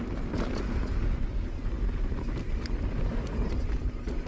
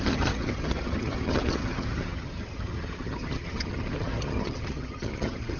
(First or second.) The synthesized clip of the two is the second